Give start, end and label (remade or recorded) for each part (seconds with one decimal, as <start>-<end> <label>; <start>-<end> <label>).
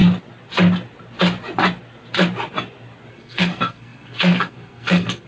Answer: 0.0-3.1 recorded; 3.1-5.3 remade